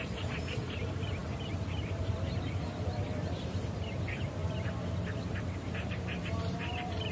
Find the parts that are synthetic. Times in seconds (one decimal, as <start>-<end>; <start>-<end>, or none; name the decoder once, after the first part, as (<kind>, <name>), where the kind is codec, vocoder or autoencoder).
0.0-4.4 (vocoder, BigVGAN v2); 5.2-7.1